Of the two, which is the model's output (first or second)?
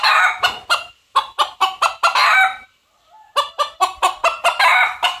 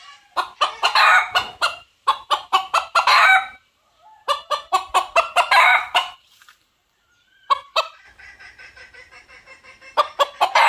second